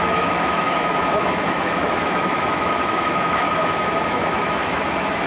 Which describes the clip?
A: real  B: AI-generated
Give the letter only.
B